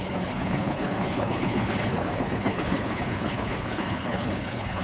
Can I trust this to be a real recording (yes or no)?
no